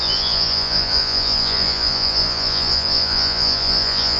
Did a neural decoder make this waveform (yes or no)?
yes